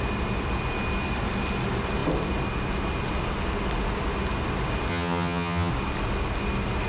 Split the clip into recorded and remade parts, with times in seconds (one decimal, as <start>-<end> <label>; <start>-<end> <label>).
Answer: 0.0-4.9 recorded; 4.9-5.7 remade; 5.7-6.9 recorded